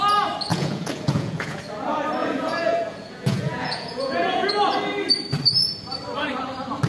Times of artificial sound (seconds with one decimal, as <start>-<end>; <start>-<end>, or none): 0.5-1.6; 2.2-4.5